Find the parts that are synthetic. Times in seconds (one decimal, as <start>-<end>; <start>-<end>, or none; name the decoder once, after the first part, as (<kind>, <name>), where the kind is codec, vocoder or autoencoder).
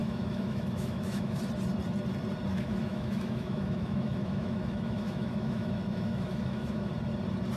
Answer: 0.0-1.4 (autoencoder, DAC-VAE); 2.5-6.9